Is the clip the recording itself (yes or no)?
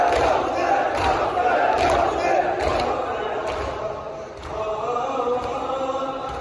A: yes